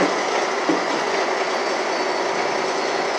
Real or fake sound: fake